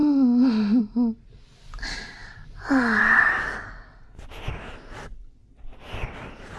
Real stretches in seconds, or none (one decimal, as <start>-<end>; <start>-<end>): 0.0-6.6

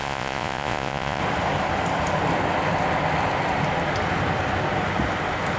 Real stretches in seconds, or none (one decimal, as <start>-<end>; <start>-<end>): 1.2-5.6

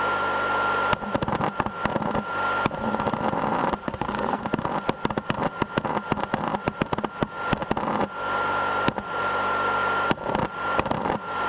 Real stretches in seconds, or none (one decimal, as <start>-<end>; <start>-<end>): 0.0-3.8; 4.4-11.5

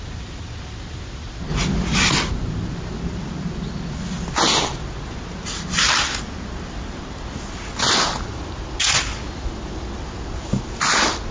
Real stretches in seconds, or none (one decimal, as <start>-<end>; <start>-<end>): 0.0-11.3

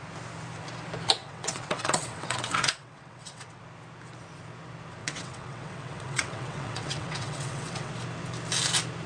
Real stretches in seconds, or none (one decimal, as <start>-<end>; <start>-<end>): 0.0-1.2; 3.6-5.0; 7.9-9.1

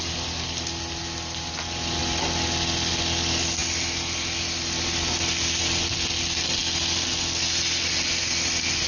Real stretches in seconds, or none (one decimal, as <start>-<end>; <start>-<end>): 0.0-8.9